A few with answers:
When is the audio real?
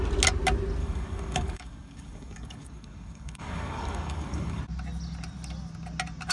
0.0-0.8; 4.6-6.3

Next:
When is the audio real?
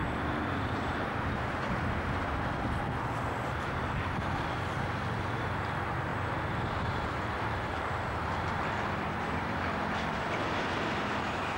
1.7-6.1; 8.6-11.6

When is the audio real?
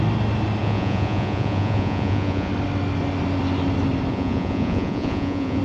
0.0-0.6; 2.5-4.1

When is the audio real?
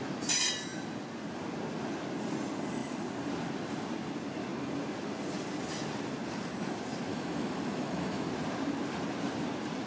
0.0-7.1; 8.3-9.9